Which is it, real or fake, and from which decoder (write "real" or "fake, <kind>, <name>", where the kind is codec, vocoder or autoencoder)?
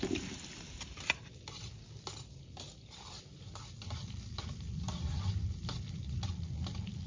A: real